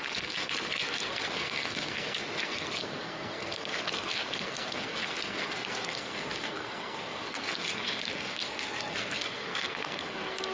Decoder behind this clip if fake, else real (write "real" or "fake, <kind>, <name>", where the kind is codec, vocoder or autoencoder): fake, codec, SNAC